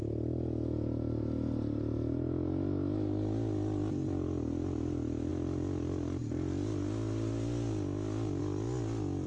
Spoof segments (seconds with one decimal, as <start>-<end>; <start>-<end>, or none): none